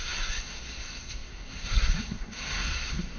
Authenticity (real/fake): fake